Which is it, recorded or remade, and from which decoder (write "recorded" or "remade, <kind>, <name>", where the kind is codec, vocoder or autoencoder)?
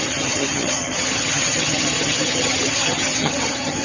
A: remade, vocoder, HiFi-GAN